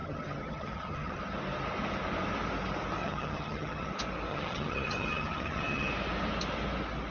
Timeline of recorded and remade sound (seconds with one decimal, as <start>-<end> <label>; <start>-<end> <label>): 0.0-1.2 remade; 1.2-3.0 recorded; 3.0-3.9 remade; 3.9-4.3 recorded; 4.3-5.9 remade; 5.9-7.1 recorded